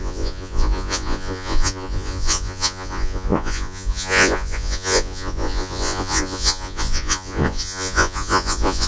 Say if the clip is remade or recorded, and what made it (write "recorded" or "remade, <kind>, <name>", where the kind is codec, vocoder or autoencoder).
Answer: remade, vocoder, Vocos